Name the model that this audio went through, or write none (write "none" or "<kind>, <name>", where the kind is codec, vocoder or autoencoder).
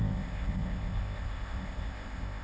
codec, ZipCodec